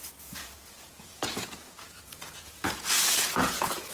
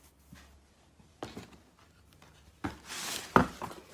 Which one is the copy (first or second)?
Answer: first